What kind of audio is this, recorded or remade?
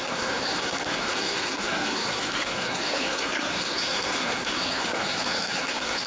remade